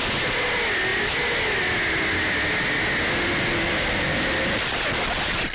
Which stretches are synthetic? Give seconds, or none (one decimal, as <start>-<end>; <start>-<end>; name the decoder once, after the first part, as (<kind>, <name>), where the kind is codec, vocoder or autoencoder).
none